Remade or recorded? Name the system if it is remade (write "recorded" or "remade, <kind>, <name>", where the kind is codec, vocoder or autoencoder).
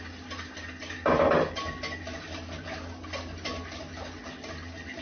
recorded